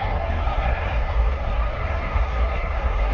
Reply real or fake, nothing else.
fake